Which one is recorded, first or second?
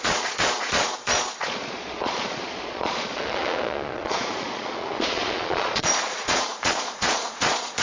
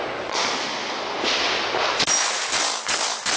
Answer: second